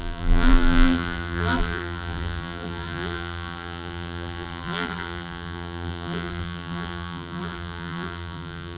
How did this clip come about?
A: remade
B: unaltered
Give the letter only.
A